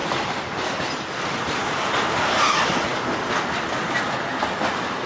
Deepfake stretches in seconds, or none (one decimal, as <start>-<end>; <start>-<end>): none